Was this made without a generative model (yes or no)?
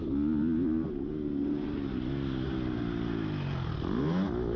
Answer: yes